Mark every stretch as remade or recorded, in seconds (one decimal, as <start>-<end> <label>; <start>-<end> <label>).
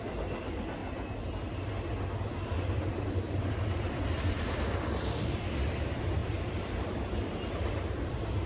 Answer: 0.0-0.8 remade; 0.8-2.7 recorded; 2.7-8.5 remade